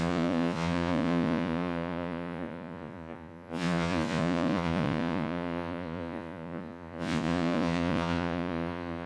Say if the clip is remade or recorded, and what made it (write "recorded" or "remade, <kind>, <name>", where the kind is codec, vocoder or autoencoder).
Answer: remade, vocoder, Vocos